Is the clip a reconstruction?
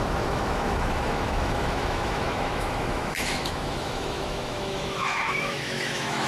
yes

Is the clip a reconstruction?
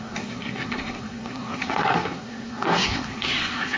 yes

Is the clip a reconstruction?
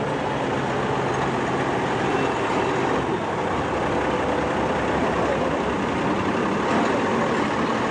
no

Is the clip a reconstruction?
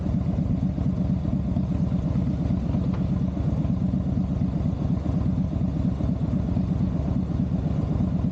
no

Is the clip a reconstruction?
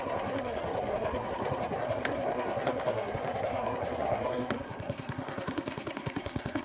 yes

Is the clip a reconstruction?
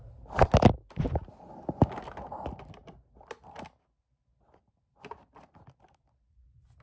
no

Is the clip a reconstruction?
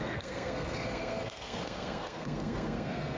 yes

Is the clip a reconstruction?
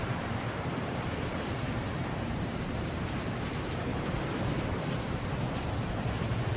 yes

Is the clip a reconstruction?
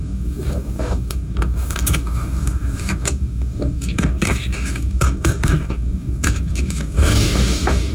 yes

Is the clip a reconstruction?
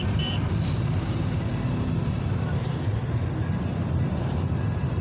yes